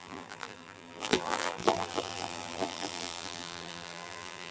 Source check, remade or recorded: remade